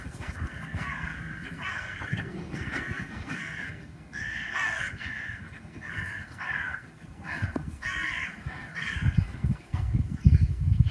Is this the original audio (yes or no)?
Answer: no